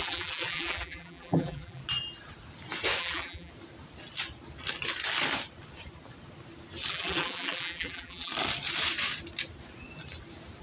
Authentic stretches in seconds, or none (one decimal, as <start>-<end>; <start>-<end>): 1.8-3.0; 3.5-6.9; 8.3-10.6